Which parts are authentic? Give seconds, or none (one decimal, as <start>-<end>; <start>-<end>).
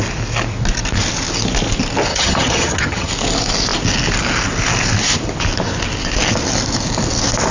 0.0-2.1; 3.1-7.5